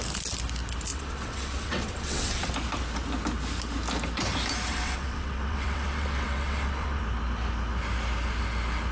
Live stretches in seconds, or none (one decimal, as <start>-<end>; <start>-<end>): 0.0-0.9; 2.5-4.7; 7.0-8.9